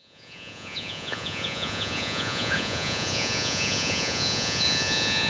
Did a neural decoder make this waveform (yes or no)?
yes